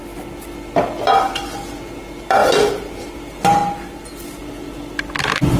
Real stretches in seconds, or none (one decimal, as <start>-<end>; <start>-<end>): 0.0-5.6